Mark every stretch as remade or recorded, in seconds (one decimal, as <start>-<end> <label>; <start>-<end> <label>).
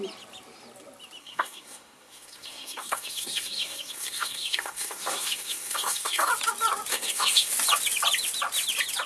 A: 0.0-1.2 recorded; 1.2-6.3 remade; 6.3-6.9 recorded; 6.9-7.5 remade; 7.5-9.1 recorded